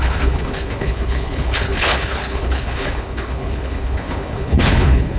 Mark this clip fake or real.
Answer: fake